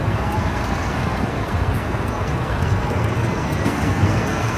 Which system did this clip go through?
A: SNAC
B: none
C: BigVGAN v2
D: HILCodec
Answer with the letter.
A